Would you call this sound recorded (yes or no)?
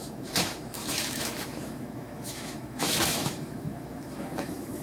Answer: no